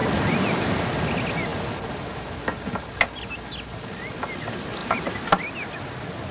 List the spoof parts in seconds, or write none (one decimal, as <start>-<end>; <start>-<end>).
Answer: none